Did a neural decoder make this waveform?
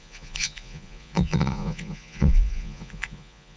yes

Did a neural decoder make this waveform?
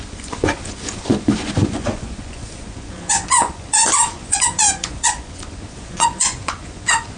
yes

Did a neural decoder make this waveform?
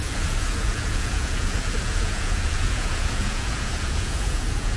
yes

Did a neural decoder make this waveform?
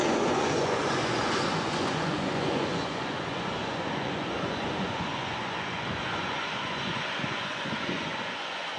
yes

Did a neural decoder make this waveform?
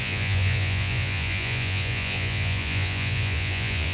yes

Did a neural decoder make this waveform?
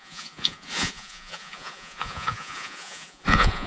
yes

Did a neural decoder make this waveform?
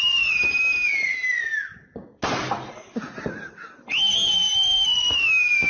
no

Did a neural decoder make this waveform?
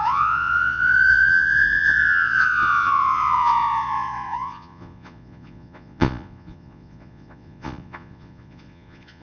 yes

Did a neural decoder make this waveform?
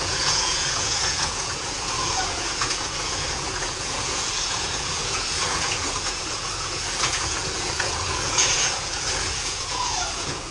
yes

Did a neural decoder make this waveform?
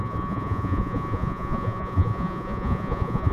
yes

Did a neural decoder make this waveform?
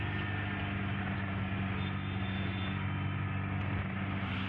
no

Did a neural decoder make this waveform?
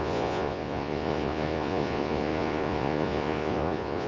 yes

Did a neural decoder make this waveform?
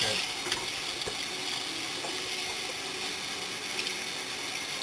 no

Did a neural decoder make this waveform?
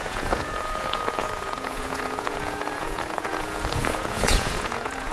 yes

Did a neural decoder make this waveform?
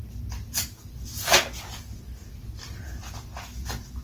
no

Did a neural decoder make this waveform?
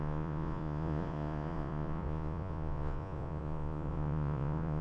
yes